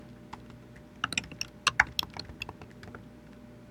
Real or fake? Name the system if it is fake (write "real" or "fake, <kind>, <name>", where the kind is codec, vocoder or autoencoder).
real